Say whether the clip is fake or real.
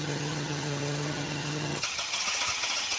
fake